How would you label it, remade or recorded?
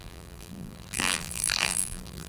remade